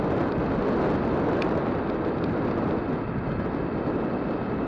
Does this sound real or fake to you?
real